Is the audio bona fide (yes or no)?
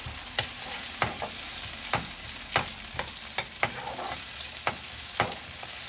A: yes